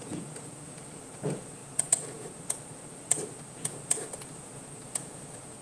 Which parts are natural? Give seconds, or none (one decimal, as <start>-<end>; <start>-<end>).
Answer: none